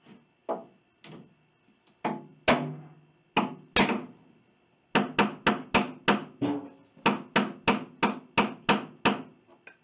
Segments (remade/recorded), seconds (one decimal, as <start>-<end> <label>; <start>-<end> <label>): 0.0-9.8 recorded